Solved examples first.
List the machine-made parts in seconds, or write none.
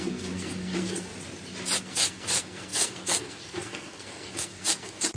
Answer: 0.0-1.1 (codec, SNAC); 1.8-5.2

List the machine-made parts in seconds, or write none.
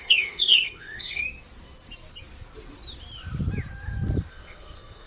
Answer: 0.0-1.2 (codec, SNAC); 4.3-5.1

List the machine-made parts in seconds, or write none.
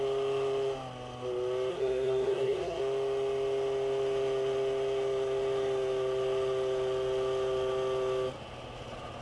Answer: 1.7-2.8 (codec, SNAC)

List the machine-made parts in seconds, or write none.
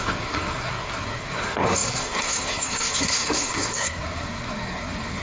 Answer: 0.0-5.2 (codec, SNAC)